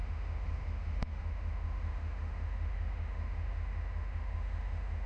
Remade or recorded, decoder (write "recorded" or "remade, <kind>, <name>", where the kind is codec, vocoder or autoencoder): remade, autoencoder, DAC-VAE